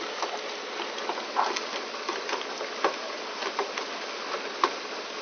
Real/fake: real